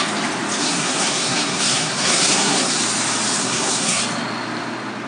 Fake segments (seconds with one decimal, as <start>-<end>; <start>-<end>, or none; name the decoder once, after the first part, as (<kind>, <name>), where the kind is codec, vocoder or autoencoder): 0.6-2.8 (codec, SNAC); 3.4-4.0